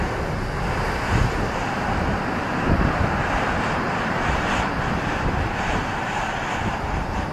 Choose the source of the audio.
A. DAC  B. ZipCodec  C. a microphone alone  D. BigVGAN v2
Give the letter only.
C